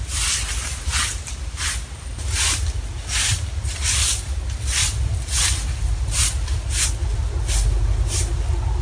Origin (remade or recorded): recorded